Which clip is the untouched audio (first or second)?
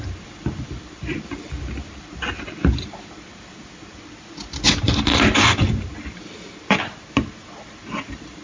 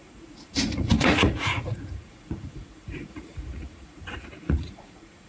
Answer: first